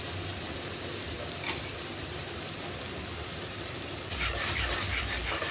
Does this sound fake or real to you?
fake